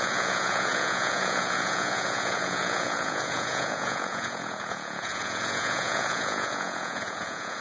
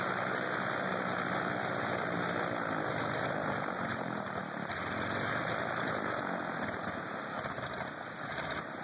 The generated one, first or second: first